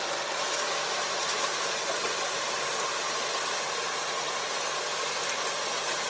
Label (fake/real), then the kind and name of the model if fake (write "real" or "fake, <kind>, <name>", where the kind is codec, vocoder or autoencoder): real